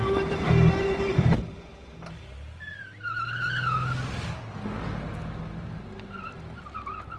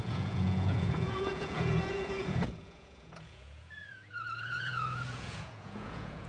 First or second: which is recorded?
first